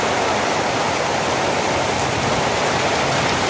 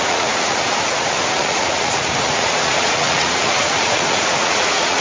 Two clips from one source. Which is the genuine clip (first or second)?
first